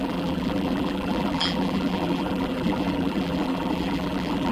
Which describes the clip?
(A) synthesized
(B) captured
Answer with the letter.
A